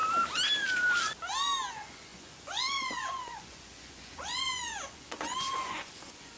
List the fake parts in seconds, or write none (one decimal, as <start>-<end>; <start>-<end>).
1.7-6.4